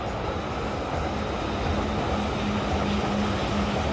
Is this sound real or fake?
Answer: real